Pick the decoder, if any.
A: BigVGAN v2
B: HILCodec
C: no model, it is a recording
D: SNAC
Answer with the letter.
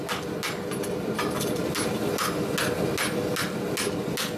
C